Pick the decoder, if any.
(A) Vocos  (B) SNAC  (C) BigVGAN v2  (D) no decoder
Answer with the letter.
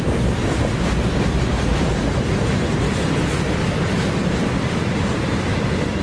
D